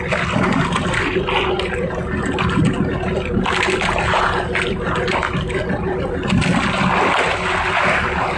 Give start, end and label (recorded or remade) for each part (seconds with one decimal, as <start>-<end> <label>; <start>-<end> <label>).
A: 0.0-8.4 recorded